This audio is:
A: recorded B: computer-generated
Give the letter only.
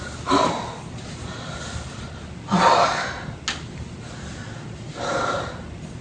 A